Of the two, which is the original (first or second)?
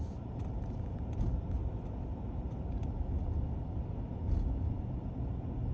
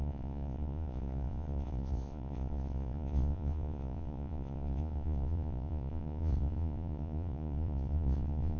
first